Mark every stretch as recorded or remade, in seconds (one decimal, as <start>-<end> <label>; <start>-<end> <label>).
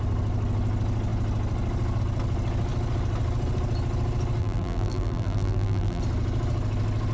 0.0-4.4 recorded; 4.4-6.0 remade; 6.0-7.1 recorded